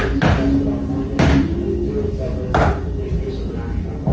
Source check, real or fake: real